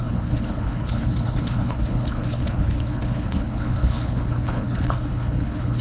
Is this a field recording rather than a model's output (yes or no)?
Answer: no